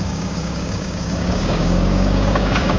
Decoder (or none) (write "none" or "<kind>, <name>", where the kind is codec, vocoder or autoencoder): codec, DAC